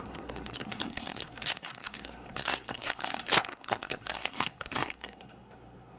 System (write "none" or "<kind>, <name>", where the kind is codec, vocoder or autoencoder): codec, SNAC